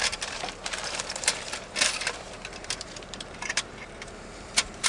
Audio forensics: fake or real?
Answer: fake